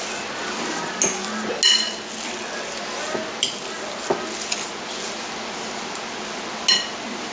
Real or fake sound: real